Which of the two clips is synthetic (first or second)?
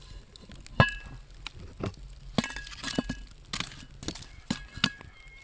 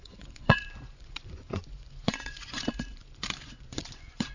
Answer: second